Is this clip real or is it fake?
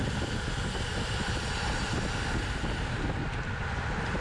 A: real